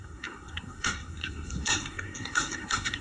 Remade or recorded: remade